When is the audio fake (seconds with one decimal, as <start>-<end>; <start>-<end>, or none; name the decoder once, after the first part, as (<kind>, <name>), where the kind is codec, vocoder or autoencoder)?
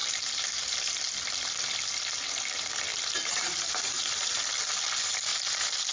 0.0-0.9 (vocoder, BigVGAN v2); 2.9-4.4